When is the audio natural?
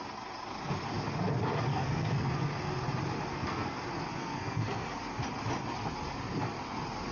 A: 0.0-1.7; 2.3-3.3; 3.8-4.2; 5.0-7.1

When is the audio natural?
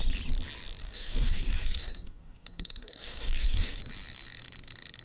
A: 0.0-0.8; 3.8-5.0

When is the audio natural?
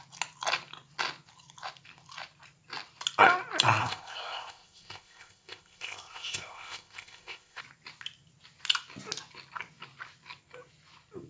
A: 0.0-3.8; 7.6-11.3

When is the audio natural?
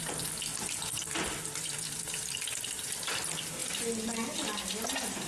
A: 0.0-5.3